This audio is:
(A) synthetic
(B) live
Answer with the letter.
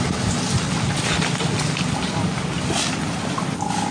B